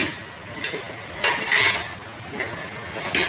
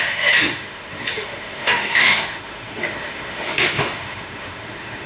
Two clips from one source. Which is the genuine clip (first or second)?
first